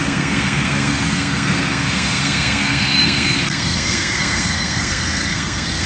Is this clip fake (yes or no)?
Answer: yes